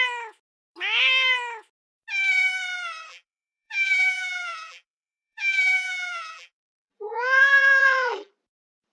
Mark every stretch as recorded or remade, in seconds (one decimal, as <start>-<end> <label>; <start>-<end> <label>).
0.0-3.1 recorded; 3.1-8.3 remade; 8.3-8.9 recorded